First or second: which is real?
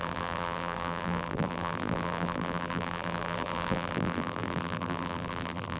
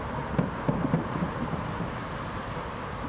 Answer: second